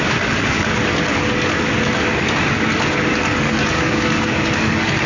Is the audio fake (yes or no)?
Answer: yes